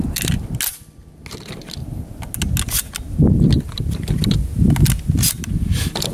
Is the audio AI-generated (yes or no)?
no